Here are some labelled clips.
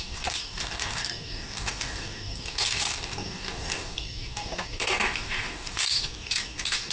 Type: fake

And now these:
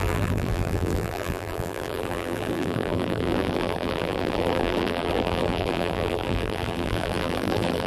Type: fake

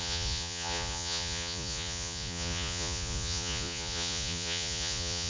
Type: fake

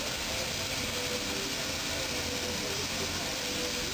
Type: real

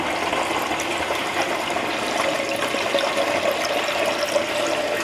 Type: real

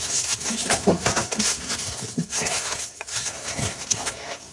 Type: fake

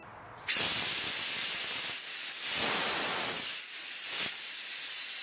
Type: real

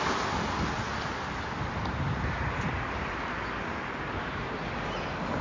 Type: fake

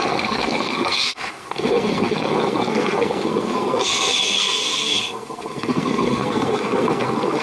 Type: fake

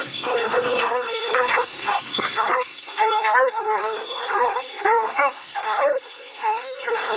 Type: fake